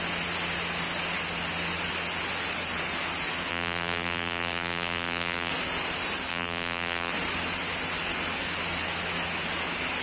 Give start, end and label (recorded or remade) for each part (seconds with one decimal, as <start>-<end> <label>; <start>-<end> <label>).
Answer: 0.0-3.5 recorded; 3.5-5.5 remade; 5.5-6.3 recorded; 6.3-7.1 remade; 7.1-10.0 recorded